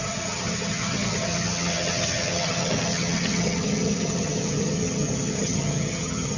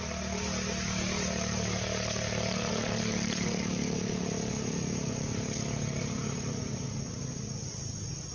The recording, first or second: second